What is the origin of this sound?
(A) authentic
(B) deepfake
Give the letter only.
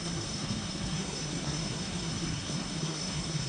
B